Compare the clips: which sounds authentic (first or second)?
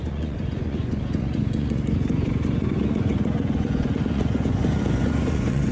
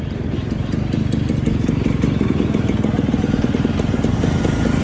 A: second